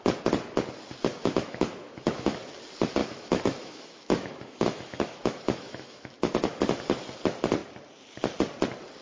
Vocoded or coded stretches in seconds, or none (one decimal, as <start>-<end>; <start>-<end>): 1.1-2.4; 3.0-6.6